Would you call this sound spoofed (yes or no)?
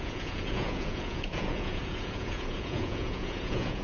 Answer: yes